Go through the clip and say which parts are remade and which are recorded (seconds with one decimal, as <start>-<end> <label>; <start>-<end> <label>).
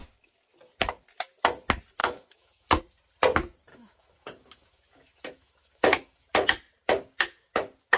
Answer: 0.0-2.0 recorded; 2.0-2.8 remade; 2.8-3.7 recorded; 3.7-6.2 remade; 6.2-8.0 recorded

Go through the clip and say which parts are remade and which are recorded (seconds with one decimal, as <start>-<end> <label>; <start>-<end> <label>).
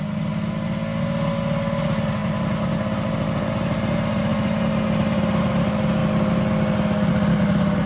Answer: 0.0-7.9 recorded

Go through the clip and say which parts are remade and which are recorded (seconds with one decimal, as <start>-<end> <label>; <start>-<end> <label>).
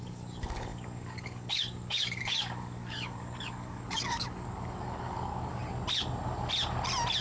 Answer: 0.0-5.6 remade; 5.6-7.2 recorded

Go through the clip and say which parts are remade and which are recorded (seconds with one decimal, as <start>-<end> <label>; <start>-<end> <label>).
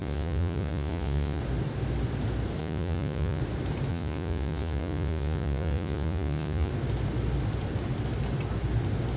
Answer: 0.0-1.4 remade; 1.4-2.6 recorded; 2.6-3.4 remade; 3.4-3.9 recorded; 3.9-6.7 remade; 6.7-9.2 recorded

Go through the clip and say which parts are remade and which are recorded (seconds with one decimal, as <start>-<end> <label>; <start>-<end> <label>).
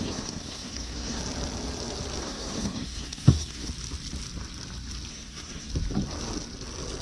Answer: 0.0-1.2 remade; 1.2-2.2 recorded; 2.2-3.7 remade; 3.7-5.1 recorded; 5.1-5.7 remade; 5.7-7.0 recorded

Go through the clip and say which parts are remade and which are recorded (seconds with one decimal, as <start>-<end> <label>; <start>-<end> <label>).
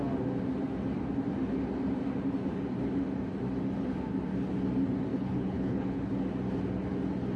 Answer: 0.0-5.1 recorded; 5.1-6.1 remade; 6.1-7.4 recorded